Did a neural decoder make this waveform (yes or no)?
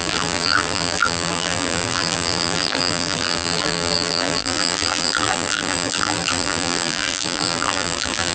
yes